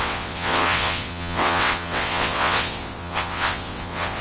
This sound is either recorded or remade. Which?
remade